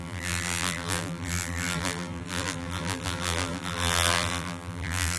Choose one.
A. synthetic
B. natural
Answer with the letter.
A